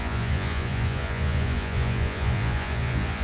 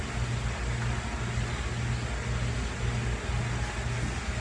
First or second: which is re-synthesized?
first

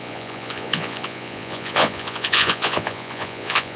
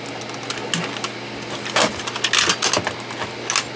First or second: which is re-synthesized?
first